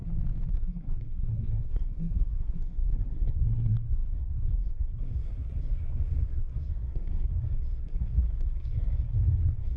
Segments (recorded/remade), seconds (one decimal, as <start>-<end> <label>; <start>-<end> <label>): 0.0-0.5 recorded; 0.5-9.8 remade

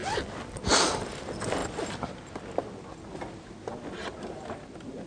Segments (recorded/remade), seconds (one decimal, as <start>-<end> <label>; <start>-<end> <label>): 0.0-5.1 recorded

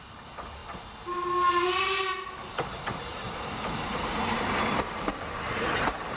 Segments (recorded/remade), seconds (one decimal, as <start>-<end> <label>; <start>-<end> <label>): 0.0-2.4 recorded; 2.4-6.2 remade

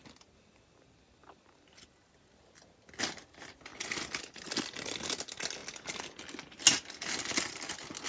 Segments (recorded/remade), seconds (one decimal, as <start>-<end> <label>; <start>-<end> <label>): 0.0-8.1 recorded

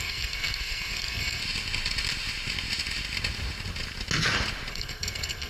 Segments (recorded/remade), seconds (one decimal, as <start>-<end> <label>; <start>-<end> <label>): 0.0-1.4 remade; 1.4-4.7 recorded; 4.7-5.5 remade

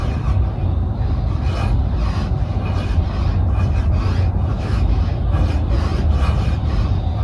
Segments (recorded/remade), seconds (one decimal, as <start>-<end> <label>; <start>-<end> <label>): 0.0-4.5 recorded; 4.5-5.1 remade; 5.1-7.2 recorded